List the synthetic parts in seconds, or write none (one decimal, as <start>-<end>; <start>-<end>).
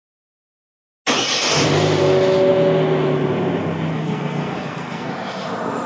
3.9-5.1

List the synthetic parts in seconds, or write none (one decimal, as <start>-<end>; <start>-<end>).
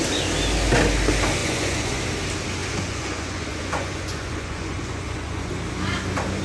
1.4-2.0; 2.6-5.5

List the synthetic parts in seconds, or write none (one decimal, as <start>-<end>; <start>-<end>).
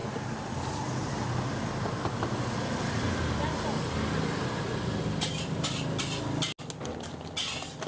none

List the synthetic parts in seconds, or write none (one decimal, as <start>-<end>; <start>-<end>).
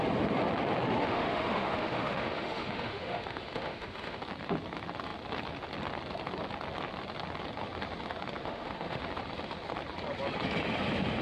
1.0-4.2; 8.4-9.0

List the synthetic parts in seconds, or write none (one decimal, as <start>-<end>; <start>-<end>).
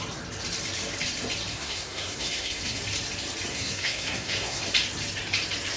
1.5-2.8; 3.5-4.6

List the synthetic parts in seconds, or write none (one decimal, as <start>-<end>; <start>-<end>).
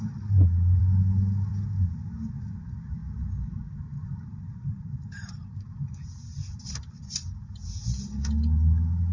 4.0-5.7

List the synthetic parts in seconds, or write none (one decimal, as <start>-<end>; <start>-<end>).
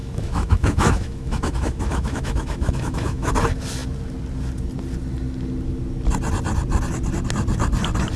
0.0-3.3